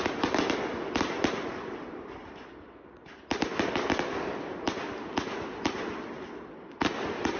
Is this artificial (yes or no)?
no